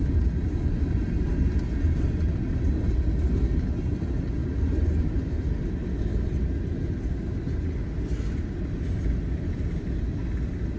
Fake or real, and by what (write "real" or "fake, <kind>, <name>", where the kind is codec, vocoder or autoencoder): real